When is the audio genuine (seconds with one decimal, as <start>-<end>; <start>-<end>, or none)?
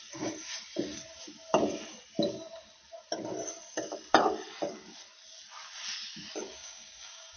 0.0-6.6